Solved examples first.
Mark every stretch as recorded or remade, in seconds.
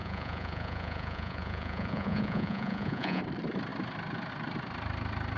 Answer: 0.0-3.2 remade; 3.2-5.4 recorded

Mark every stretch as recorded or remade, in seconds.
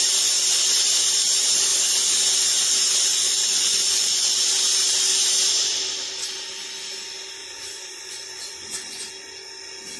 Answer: 0.0-3.1 recorded; 3.1-4.4 remade; 4.4-7.4 recorded; 7.4-9.1 remade; 9.1-10.0 recorded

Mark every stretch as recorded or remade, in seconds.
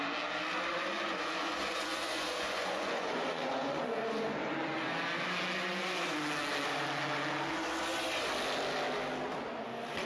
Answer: 0.0-0.7 recorded; 0.7-4.0 remade; 4.0-10.1 recorded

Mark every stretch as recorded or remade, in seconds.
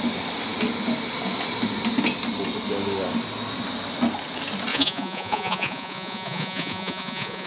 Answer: 0.0-4.7 recorded; 4.7-7.5 remade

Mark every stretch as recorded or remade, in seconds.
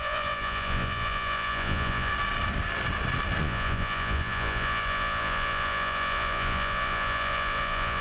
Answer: 0.0-2.1 remade; 2.1-3.4 recorded; 3.4-8.0 remade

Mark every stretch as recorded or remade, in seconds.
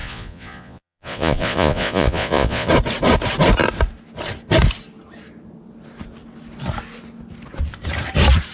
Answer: 0.0-2.7 remade; 2.7-8.5 recorded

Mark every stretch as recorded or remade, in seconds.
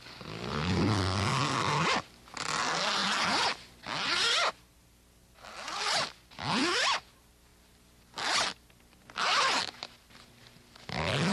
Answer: 0.0-11.3 recorded